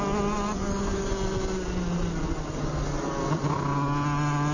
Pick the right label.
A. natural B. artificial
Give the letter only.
A